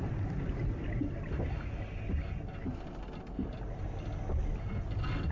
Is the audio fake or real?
real